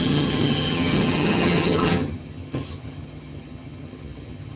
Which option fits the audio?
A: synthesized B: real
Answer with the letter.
A